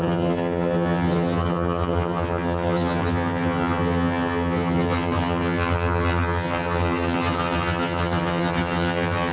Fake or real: fake